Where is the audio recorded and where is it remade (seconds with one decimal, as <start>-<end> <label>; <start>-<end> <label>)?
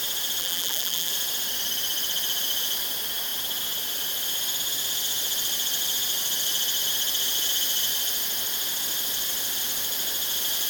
0.0-0.4 recorded; 0.4-1.1 remade; 1.1-10.7 recorded